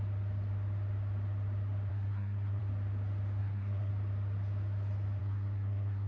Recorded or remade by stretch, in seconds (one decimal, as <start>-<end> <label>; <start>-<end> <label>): 0.0-1.9 recorded; 1.9-2.6 remade; 2.6-3.4 recorded; 3.4-3.9 remade; 3.9-5.2 recorded; 5.2-6.1 remade